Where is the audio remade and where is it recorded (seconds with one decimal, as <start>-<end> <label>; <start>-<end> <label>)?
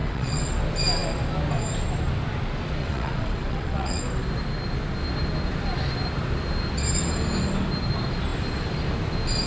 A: 0.0-0.6 remade; 0.6-2.8 recorded; 2.8-4.0 remade; 4.0-9.5 recorded